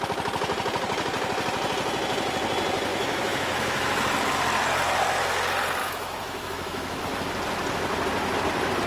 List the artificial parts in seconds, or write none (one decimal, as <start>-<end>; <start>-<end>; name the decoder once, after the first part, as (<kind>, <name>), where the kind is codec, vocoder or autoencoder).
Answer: 2.9-4.0 (autoencoder, DAC-VAE); 5.8-7.0